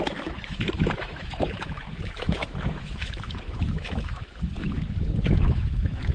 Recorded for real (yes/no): no